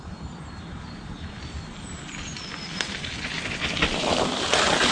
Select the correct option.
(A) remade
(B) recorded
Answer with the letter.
B